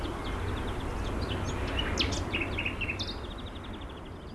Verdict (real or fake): real